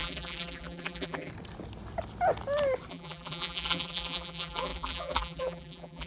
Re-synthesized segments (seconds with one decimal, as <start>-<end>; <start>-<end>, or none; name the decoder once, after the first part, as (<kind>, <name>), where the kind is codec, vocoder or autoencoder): 0.0-1.3 (vocoder, BigVGAN v2); 2.9-6.1